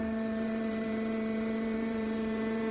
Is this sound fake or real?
fake